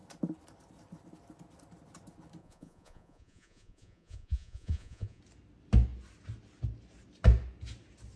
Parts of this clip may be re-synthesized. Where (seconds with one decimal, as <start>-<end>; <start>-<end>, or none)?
2.4-5.2